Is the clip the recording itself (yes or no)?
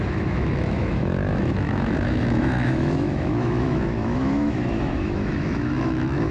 no